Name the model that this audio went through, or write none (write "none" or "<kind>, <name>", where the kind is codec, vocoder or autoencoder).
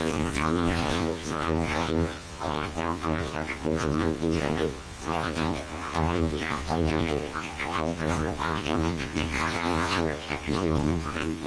vocoder, Vocos